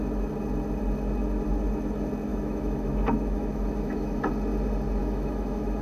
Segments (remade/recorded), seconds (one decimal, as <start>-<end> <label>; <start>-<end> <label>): 0.0-2.3 recorded; 2.3-4.3 remade; 4.3-5.0 recorded; 5.0-5.8 remade